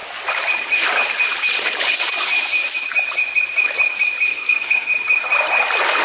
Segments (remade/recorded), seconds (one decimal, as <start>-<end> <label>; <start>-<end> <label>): 0.0-4.3 recorded; 4.3-4.9 remade; 4.9-6.0 recorded